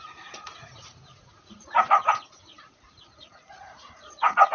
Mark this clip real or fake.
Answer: fake